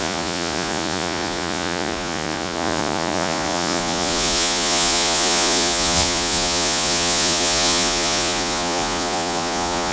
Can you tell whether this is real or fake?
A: fake